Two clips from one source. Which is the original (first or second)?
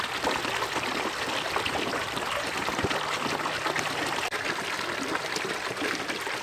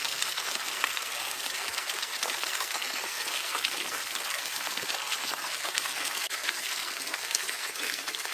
first